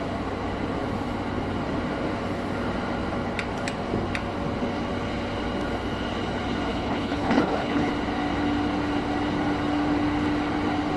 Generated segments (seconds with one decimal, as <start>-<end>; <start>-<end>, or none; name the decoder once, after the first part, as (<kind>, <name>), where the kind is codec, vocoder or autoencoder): 6.7-7.9 (codec, HILCodec)